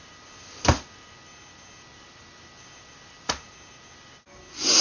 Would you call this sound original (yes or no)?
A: yes